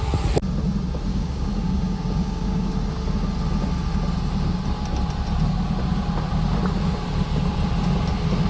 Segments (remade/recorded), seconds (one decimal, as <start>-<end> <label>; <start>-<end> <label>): 0.0-1.1 recorded; 1.1-2.7 remade; 2.7-8.5 recorded